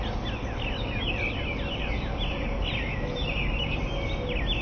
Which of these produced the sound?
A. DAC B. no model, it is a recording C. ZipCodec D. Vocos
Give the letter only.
B